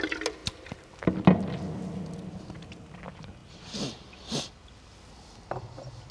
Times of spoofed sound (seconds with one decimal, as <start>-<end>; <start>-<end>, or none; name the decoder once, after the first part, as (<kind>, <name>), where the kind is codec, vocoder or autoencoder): none